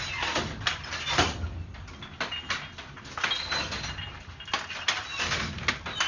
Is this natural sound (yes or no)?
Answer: yes